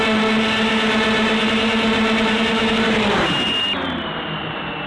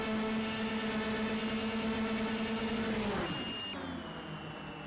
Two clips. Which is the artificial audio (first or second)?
first